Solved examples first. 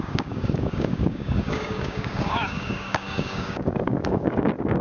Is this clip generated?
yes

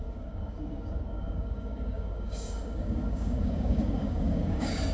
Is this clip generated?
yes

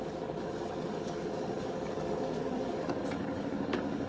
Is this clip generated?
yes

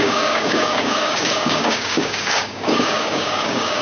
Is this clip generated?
yes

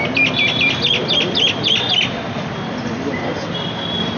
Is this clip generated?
no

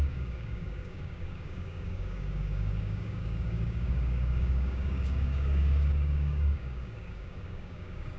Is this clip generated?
yes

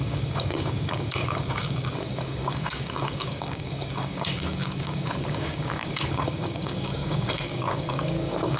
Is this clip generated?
yes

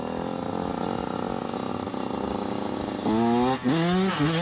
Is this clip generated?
no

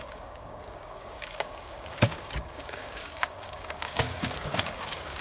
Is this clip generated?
yes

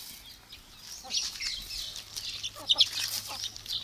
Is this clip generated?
no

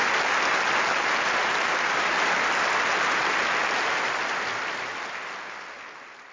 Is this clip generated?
no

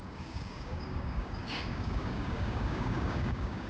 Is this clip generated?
yes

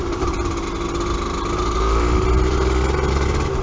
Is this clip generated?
no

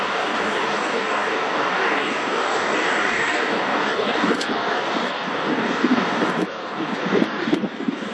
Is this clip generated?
yes